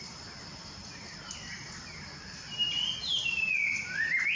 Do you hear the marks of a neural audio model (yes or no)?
no